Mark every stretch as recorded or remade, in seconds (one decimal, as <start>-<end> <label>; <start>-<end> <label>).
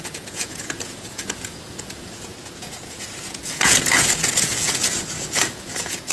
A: 0.0-6.1 remade